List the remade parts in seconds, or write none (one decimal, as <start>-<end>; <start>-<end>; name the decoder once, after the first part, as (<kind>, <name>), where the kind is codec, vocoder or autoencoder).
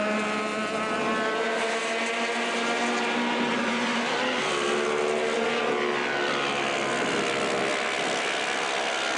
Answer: none